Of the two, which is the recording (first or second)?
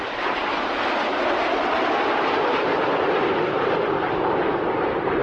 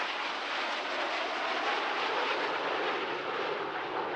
second